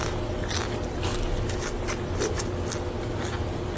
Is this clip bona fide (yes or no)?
yes